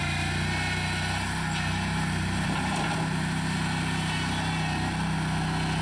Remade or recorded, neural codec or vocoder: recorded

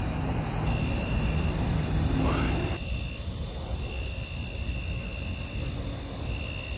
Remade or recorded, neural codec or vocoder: recorded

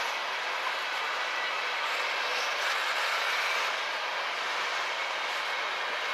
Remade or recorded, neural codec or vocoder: recorded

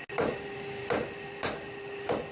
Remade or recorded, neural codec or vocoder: recorded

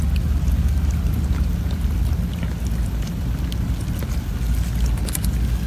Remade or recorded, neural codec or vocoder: recorded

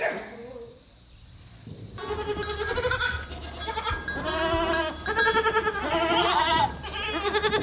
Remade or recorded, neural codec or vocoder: recorded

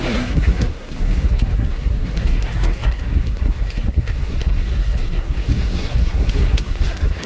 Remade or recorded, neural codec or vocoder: remade, codec, SNAC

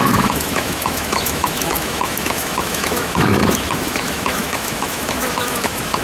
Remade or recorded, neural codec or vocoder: remade, autoencoder, DAC-VAE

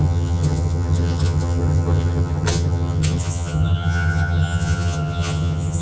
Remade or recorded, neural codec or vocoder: remade, vocoder, HiFi-GAN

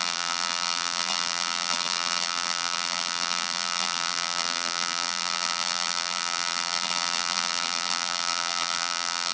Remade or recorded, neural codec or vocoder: remade, vocoder, BigVGAN v2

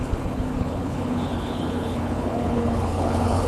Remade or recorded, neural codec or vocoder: remade, codec, HILCodec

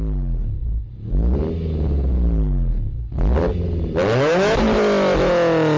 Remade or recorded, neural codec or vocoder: recorded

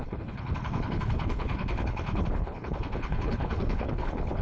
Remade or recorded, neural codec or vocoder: remade, codec, HILCodec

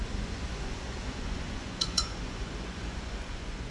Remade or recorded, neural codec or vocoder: remade, vocoder, Vocos